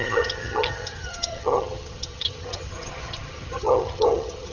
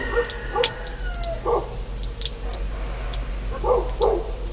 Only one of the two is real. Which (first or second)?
second